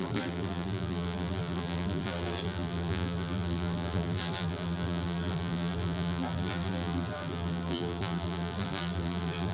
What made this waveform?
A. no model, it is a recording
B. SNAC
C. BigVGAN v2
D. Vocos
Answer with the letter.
C